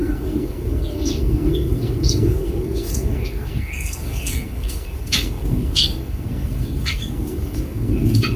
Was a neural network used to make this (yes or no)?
yes